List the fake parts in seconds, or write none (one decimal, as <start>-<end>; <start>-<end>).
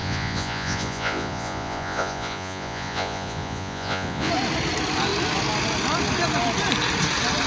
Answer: 0.0-4.3